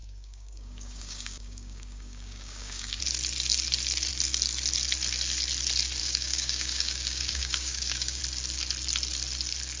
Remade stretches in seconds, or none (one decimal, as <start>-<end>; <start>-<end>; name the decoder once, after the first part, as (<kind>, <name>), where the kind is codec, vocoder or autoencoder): 0.0-3.0 (codec, DAC); 6.0-8.2